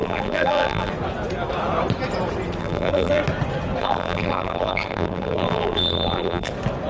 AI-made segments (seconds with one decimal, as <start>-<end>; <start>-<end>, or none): 0.0-0.9; 2.6-3.2; 3.8-6.5